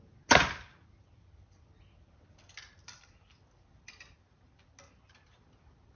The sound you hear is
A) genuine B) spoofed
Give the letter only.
A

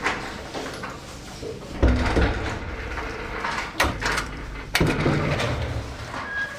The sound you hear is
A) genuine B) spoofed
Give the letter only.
B